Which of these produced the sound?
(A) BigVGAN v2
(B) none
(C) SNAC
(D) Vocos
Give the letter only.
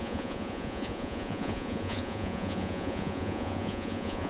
D